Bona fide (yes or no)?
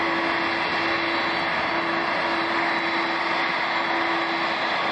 yes